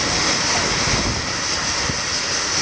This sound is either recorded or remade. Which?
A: recorded